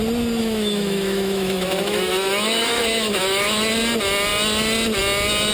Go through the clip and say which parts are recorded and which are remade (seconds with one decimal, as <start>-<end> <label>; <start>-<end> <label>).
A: 0.0-0.4 recorded; 0.4-3.7 remade; 3.7-5.5 recorded